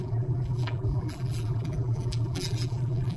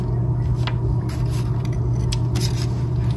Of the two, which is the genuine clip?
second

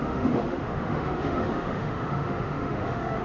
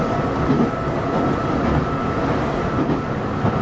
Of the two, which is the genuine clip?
second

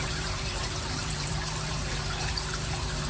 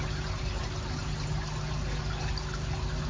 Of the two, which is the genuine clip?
second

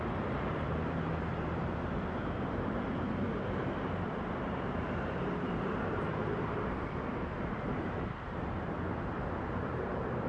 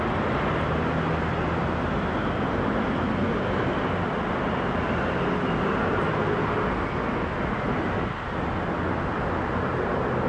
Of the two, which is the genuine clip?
second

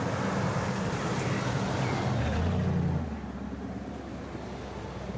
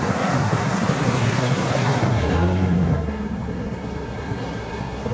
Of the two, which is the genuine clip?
first